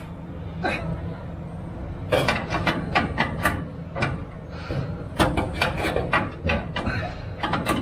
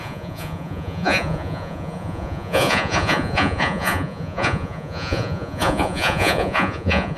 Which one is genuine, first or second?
first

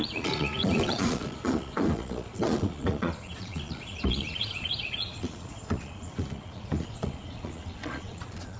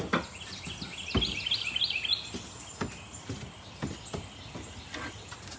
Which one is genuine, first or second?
second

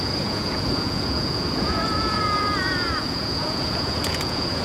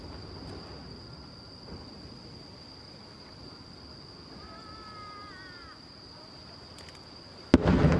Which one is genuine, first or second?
second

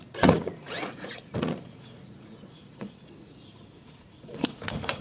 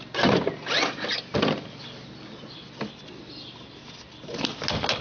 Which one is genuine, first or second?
second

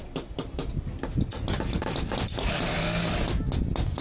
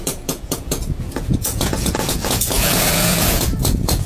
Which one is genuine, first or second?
first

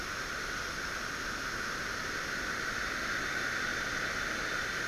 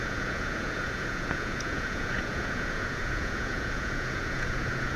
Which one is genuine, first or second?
first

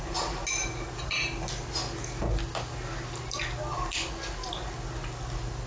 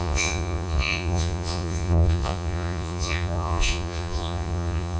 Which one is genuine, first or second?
first